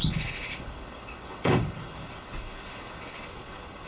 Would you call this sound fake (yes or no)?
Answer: yes